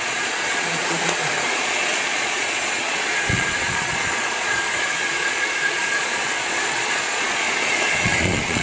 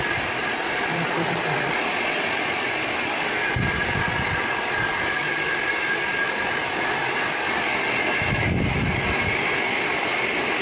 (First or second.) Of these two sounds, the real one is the second